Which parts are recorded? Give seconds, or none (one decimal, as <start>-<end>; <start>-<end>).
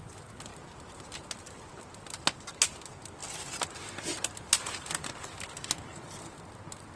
0.0-7.0